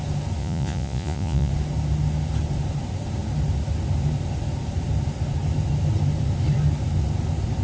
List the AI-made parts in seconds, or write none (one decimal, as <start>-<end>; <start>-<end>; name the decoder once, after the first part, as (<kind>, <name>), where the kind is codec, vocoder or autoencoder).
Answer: 0.4-1.5 (vocoder, Vocos)